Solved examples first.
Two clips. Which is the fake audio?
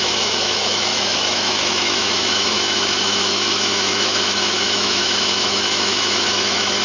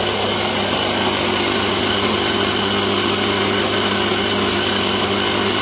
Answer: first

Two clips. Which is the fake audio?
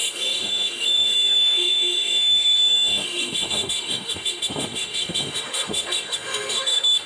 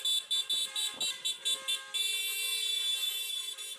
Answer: first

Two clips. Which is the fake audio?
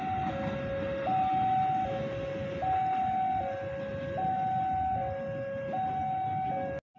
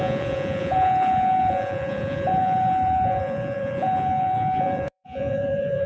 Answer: second